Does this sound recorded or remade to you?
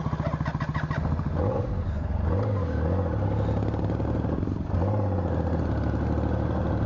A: recorded